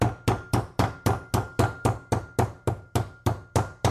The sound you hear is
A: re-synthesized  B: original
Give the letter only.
B